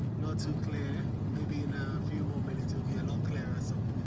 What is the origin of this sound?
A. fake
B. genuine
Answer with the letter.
B